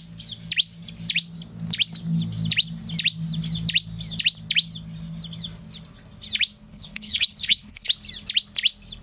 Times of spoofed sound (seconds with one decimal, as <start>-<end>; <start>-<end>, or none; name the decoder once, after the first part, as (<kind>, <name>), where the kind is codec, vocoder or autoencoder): 6.7-7.9 (codec, HILCodec)